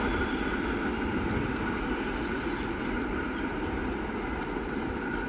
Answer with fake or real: real